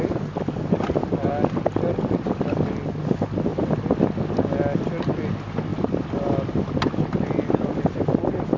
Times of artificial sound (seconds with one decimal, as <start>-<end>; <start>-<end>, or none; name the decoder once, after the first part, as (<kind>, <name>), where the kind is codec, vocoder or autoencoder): 5.7-6.6 (vocoder, BigVGAN v2)